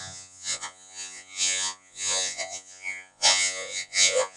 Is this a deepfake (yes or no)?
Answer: yes